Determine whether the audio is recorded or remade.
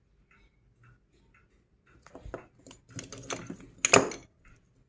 recorded